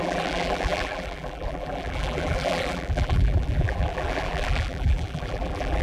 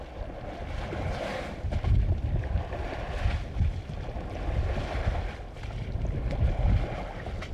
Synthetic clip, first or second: first